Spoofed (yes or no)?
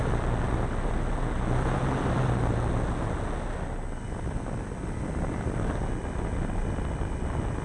no